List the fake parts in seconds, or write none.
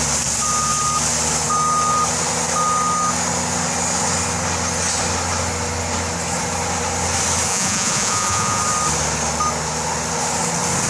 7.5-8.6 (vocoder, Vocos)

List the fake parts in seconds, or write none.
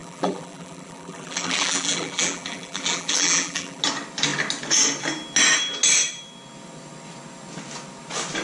0.0-3.8 (vocoder, BigVGAN v2)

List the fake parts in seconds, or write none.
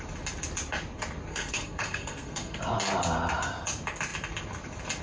1.3-2.6 (codec, SNAC)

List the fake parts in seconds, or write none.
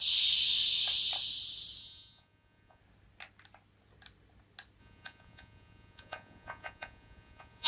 1.8-2.8 (vocoder, Vocos); 4.8-7.7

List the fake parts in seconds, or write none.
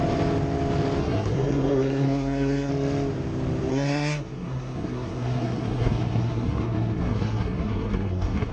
1.0-2.7 (codec, SNAC); 3.7-8.5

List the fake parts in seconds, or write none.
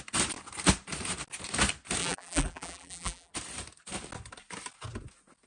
2.0-3.3 (vocoder, BigVGAN v2)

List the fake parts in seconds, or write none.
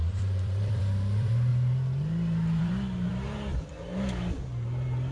0.0-1.5 (vocoder, BigVGAN v2); 2.6-3.1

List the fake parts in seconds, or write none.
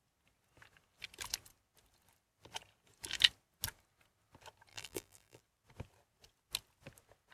4.7-5.4 (vocoder, BigVGAN v2)